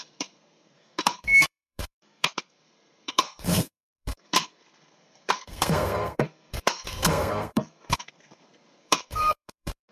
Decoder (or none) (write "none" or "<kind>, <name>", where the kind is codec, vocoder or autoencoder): codec, SNAC